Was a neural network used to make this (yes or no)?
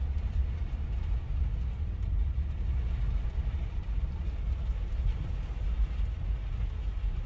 no